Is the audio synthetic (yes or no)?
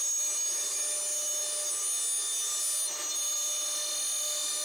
no